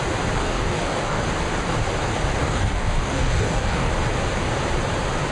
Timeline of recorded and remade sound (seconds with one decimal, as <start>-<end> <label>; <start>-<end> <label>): 0.0-0.4 recorded; 0.4-1.2 remade; 1.2-2.4 recorded; 2.4-3.9 remade; 3.9-5.3 recorded